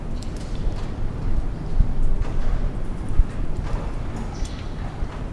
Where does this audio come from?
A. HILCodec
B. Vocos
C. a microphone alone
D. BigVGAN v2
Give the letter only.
D